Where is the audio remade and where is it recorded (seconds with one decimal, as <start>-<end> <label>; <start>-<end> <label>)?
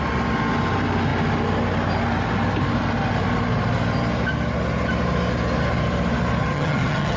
0.0-6.4 recorded; 6.4-7.2 remade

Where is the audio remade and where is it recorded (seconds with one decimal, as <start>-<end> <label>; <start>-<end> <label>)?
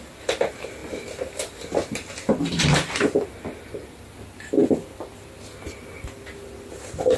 0.0-7.2 recorded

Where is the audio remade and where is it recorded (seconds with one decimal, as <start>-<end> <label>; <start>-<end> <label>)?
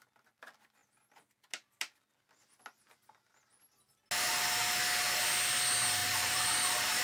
0.0-6.0 recorded; 6.0-7.0 remade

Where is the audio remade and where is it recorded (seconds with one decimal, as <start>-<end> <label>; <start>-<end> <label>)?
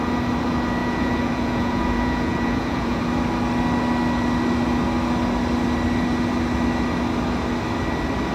0.0-0.8 recorded; 0.8-3.0 remade; 3.0-8.3 recorded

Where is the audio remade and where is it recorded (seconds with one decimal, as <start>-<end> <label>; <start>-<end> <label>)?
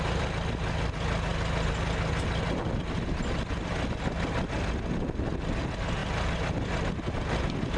0.0-7.8 recorded